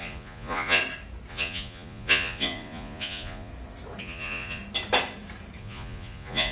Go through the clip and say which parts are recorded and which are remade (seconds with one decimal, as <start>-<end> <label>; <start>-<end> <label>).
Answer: 0.0-0.8 remade; 0.8-1.3 recorded; 1.3-3.5 remade; 3.5-4.0 recorded; 4.0-4.6 remade; 4.6-5.6 recorded; 5.6-6.5 remade